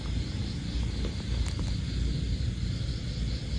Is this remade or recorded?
recorded